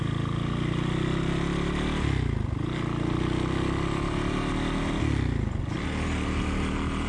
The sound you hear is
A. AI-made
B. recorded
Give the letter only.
B